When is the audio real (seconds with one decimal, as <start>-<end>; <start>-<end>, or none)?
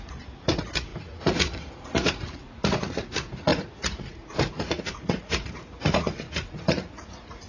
none